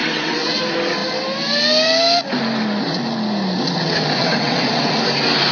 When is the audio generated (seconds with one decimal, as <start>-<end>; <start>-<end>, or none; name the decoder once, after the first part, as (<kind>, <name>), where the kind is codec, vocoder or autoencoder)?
0.0-0.6 (vocoder, WaveNeXt); 4.2-4.9